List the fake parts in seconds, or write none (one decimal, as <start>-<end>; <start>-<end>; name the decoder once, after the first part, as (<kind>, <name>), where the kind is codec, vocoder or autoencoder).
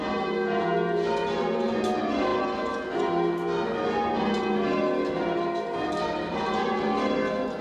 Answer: none